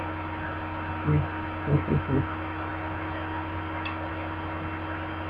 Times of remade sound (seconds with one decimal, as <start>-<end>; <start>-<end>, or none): none